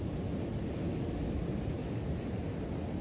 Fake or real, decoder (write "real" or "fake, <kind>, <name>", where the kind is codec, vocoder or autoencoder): real